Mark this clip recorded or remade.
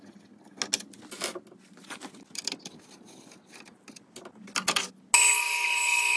recorded